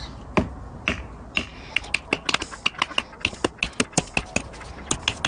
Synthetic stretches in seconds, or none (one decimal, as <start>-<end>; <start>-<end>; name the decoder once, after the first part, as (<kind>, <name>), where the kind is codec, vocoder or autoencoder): none